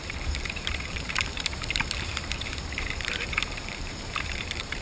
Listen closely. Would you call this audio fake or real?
fake